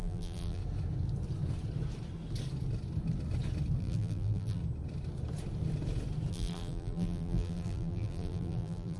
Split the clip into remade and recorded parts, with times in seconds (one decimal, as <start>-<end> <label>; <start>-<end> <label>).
0.0-0.6 remade; 0.6-3.8 recorded; 3.8-4.6 remade; 4.6-6.3 recorded; 6.3-9.0 remade